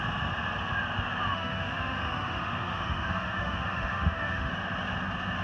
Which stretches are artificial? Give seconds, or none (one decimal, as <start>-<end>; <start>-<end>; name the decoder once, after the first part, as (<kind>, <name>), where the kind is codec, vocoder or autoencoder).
1.3-4.5 (autoencoder, DAC-VAE)